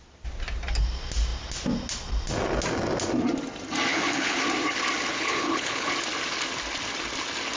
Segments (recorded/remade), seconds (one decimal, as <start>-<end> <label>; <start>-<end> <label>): 0.0-3.9 recorded; 3.9-4.4 remade; 4.4-5.1 recorded; 5.1-5.9 remade; 5.9-7.6 recorded